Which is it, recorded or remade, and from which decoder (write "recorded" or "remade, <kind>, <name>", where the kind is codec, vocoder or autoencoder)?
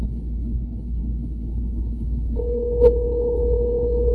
remade, codec, HILCodec